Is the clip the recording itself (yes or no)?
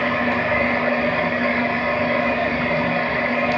no